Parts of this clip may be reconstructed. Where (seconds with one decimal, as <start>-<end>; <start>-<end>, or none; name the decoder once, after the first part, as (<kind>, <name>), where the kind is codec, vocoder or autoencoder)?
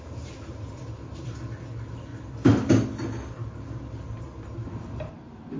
none